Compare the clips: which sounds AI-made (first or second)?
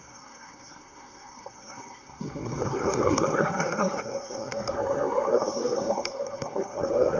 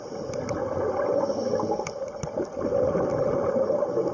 first